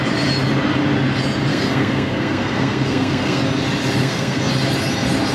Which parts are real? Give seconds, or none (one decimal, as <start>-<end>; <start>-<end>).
0.0-1.5; 3.4-4.0; 4.5-5.3